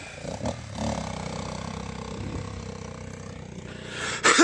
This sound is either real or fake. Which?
real